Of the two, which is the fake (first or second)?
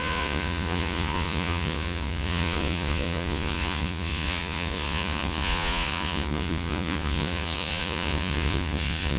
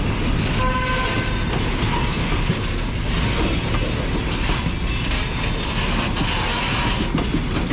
first